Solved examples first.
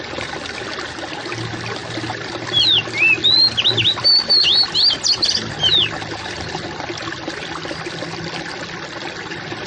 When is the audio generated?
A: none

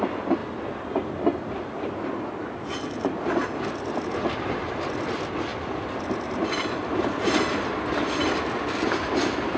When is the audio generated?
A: none

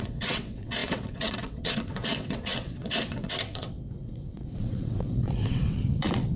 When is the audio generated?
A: 0.0-6.4